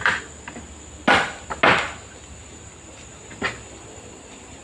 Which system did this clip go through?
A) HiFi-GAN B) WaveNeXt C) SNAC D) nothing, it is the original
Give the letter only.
D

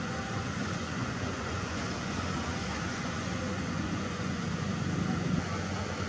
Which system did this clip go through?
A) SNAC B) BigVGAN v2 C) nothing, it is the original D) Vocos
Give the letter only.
D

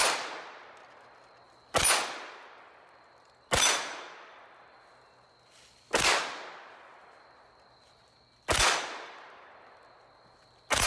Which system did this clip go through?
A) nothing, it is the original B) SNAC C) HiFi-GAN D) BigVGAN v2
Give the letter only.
A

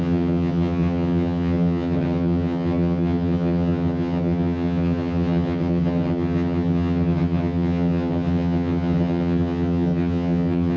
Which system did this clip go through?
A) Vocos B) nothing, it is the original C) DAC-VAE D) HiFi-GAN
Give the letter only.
D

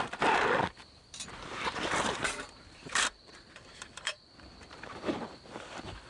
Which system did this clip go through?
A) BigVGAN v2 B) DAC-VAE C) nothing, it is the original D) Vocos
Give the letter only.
A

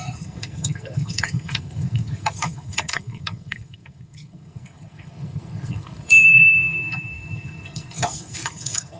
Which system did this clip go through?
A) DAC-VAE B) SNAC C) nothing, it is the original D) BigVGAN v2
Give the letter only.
B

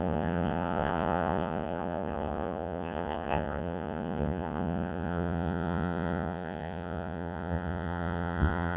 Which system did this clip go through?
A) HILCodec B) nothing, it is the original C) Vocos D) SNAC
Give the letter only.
C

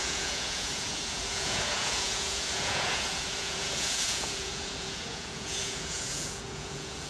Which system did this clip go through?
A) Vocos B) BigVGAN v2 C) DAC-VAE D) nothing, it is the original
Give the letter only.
A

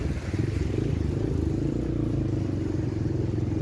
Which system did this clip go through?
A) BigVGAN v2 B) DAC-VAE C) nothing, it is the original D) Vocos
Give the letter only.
C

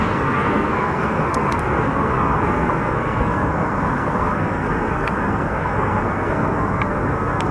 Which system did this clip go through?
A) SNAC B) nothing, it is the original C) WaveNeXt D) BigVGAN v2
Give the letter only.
A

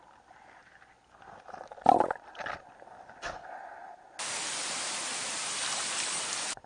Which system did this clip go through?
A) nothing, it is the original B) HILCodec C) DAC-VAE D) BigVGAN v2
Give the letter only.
A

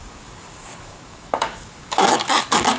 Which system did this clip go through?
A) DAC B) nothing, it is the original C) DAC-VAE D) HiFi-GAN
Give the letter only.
A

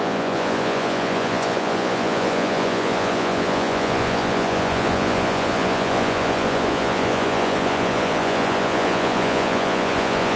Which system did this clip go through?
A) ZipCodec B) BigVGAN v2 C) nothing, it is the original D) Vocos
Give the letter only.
D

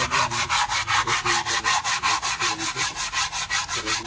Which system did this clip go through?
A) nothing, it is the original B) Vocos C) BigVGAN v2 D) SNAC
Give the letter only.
A